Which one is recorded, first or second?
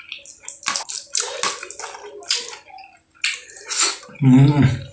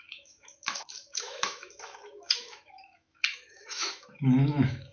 first